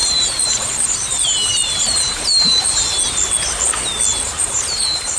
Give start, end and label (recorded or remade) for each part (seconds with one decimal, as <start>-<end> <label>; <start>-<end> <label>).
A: 0.0-3.1 remade; 3.1-4.1 recorded; 4.1-5.2 remade